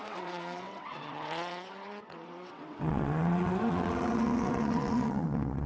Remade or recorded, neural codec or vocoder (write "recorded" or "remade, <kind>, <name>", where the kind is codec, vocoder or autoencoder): remade, vocoder, WaveNeXt